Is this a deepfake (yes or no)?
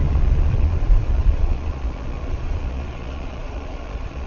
yes